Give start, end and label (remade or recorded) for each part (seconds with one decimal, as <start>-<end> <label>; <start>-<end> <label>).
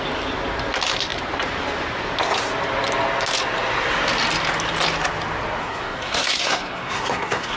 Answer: 0.0-5.6 recorded; 5.6-7.6 remade